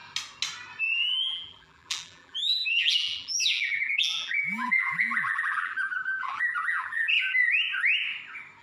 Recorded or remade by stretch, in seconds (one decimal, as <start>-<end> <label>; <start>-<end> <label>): 0.0-0.8 recorded; 0.8-7.4 remade; 7.4-8.6 recorded

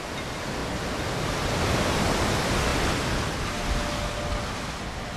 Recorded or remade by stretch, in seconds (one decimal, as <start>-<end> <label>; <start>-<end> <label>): 0.0-5.2 recorded

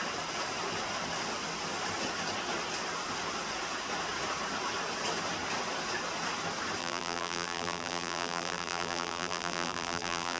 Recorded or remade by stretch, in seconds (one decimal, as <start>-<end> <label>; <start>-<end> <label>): 0.0-6.8 recorded; 6.8-10.4 remade

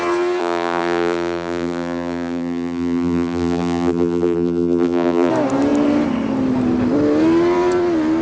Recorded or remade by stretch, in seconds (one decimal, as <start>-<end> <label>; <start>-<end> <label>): 0.0-0.4 recorded; 0.4-5.3 remade; 5.3-8.2 recorded

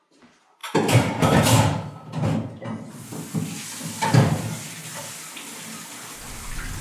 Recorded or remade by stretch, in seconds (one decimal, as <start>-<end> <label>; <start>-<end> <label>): 0.0-0.6 recorded; 0.6-1.4 remade; 1.4-6.8 recorded

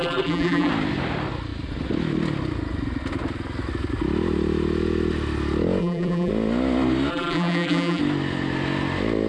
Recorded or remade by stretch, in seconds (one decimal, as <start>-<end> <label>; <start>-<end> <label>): 0.0-0.7 remade; 0.7-5.8 recorded; 5.8-6.3 remade; 6.3-7.1 recorded; 7.1-8.0 remade; 8.0-9.3 recorded